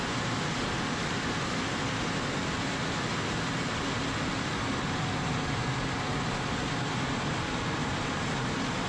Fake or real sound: real